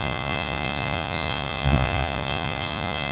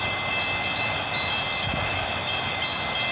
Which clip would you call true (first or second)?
second